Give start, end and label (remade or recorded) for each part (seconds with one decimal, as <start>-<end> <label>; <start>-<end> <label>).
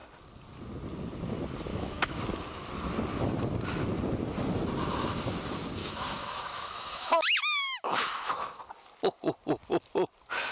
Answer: 0.0-1.7 recorded; 1.7-2.2 remade; 2.2-5.8 recorded; 5.8-8.6 remade; 8.6-10.5 recorded